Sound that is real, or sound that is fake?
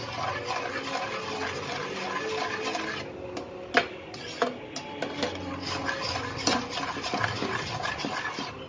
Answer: real